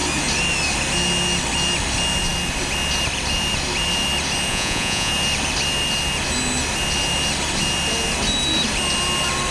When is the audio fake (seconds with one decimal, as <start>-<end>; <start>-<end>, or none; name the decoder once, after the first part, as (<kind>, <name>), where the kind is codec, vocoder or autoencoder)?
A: 4.5-5.1 (vocoder, Vocos)